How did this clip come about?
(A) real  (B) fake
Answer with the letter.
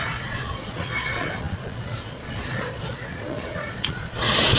B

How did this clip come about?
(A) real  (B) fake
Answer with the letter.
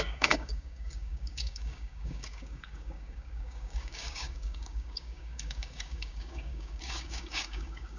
B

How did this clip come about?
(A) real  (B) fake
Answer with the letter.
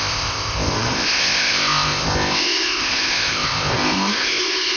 B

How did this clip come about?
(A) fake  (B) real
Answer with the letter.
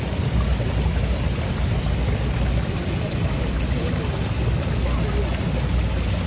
B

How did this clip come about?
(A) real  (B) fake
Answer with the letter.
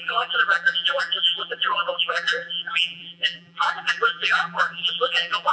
B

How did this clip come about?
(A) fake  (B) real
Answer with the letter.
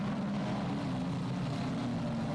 B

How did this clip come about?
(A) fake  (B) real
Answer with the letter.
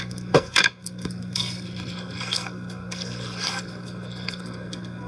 A